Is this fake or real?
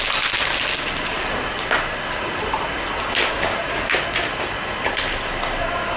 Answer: real